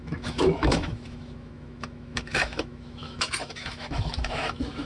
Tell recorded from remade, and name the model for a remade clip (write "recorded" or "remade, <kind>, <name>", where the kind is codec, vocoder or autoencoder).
remade, autoencoder, DAC-VAE